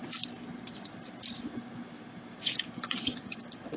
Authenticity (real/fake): fake